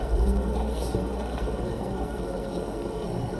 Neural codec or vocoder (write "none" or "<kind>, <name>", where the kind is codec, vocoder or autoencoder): codec, SNAC